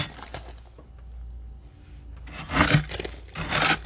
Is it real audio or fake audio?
real